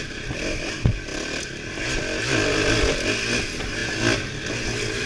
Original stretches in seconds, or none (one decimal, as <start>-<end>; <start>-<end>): 0.0-5.1